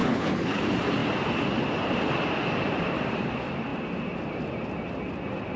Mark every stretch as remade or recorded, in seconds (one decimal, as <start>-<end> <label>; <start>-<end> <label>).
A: 0.0-0.6 remade; 0.6-5.6 recorded